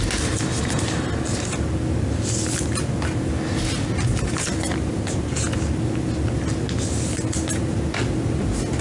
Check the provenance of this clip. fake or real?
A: real